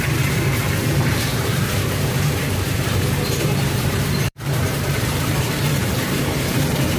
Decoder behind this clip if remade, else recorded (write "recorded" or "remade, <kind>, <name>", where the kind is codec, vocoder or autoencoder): remade, vocoder, BigVGAN v2